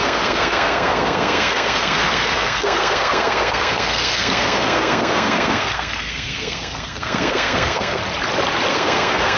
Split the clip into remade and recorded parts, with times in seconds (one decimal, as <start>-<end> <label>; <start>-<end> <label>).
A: 0.0-8.0 remade; 8.0-8.7 recorded; 8.7-9.4 remade